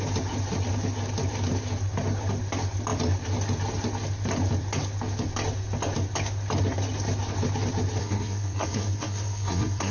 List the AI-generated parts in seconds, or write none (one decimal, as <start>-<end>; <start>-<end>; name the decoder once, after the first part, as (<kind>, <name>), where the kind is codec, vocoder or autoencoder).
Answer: 8.0-9.9 (codec, SNAC)